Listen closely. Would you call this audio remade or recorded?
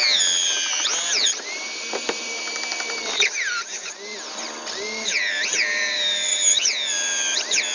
remade